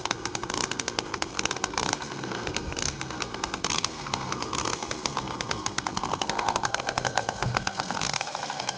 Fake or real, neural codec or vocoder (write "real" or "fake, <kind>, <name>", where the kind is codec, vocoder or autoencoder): fake, codec, SNAC